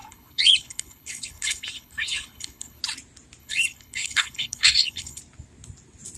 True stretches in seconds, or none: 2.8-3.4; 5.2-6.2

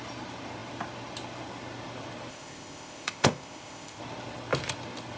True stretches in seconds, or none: 0.0-2.3; 4.0-5.2

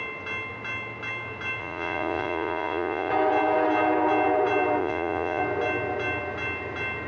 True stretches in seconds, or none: 0.0-1.6; 3.1-4.8; 5.4-7.1